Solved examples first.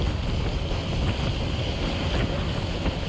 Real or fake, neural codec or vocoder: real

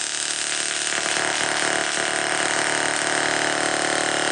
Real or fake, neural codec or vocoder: real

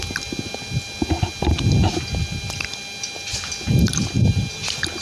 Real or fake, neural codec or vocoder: real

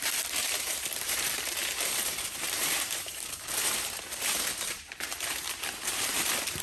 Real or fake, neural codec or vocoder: fake, vocoder, BigVGAN v2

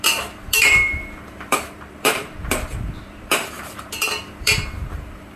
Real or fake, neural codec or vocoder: fake, vocoder, BigVGAN v2